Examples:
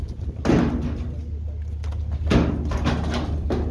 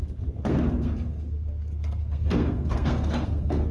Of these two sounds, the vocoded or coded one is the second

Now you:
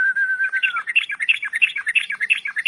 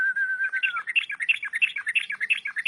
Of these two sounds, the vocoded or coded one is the first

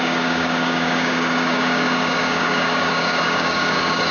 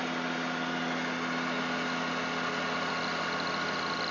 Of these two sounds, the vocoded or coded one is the first